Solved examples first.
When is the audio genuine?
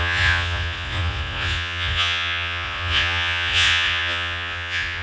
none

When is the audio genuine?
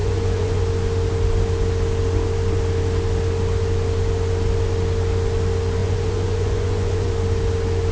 0.6-5.8; 7.1-7.9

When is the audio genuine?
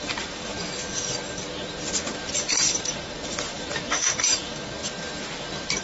0.5-2.3; 4.8-5.8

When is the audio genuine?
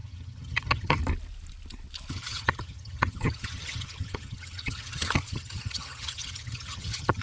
1.0-2.1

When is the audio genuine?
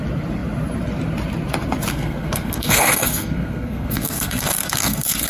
0.0-1.9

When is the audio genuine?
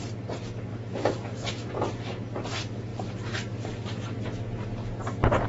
0.0-0.7; 1.7-5.5